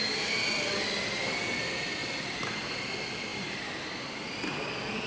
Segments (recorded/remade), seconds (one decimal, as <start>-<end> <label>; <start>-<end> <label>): 0.0-3.3 recorded; 3.3-4.1 remade; 4.1-5.1 recorded